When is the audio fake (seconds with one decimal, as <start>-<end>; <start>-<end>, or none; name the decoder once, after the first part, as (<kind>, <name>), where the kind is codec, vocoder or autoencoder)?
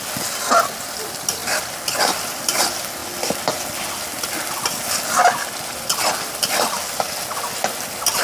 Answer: 1.4-2.6 (vocoder, BigVGAN v2)